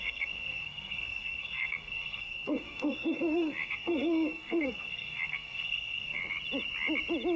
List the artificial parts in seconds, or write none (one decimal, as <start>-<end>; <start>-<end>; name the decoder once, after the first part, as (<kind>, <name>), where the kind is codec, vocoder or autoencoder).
0.0-6.2 (codec, SNAC)